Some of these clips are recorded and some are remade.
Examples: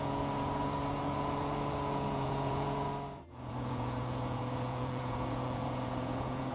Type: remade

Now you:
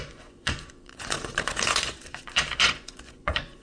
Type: remade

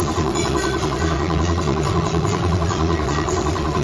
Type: remade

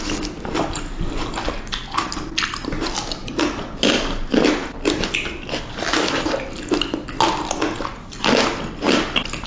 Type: recorded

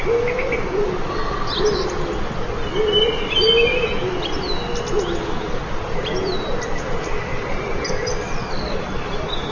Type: recorded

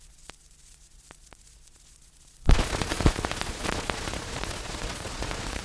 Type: remade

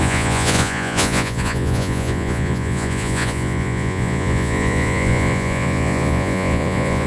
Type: remade